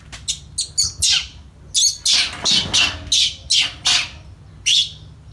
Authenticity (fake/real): real